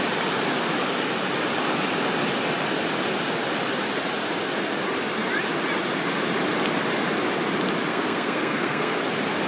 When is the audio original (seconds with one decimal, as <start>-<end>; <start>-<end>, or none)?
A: 0.0-7.9; 8.9-9.5